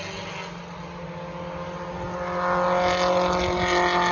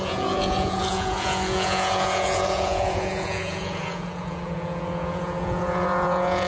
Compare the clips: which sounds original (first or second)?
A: first